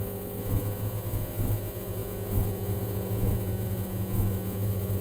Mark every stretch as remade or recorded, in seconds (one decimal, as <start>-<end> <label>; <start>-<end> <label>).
0.0-5.0 remade